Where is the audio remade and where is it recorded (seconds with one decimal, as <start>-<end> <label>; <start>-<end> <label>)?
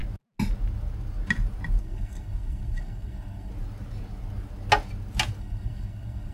0.0-1.8 recorded; 1.8-3.5 remade; 3.5-5.4 recorded; 5.4-6.3 remade